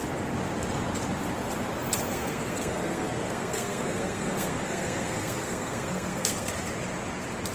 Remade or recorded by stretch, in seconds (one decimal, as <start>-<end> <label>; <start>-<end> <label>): 0.0-2.1 recorded; 2.1-6.5 remade; 6.5-7.5 recorded